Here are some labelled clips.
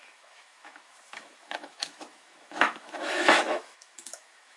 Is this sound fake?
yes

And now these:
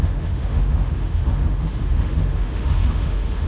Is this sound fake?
yes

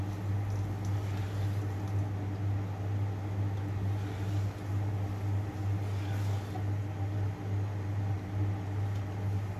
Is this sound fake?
no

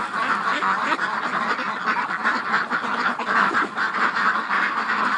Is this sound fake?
no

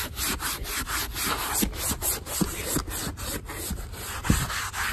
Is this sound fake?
no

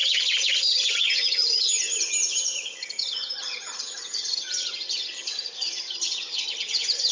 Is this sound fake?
yes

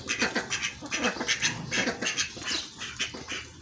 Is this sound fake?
no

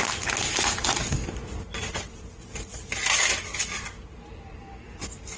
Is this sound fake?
no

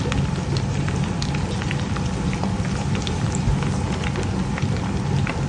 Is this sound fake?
no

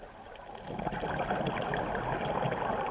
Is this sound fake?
no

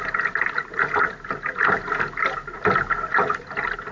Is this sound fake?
no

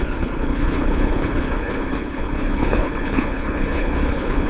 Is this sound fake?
yes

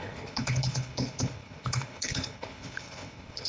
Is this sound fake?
yes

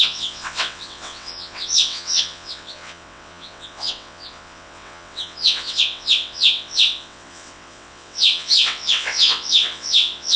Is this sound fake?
yes